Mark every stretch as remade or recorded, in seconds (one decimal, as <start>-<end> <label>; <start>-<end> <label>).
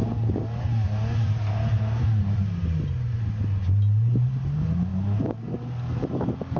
0.0-1.5 recorded; 1.5-2.0 remade; 2.0-6.6 recorded